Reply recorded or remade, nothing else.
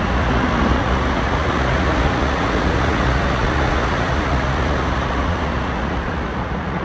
remade